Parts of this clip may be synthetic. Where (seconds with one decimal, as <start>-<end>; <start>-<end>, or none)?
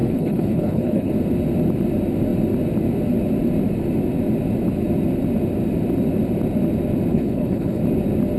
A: 0.0-1.1; 7.1-7.8